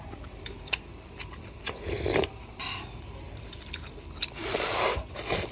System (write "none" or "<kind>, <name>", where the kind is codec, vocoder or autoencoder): vocoder, BigVGAN v2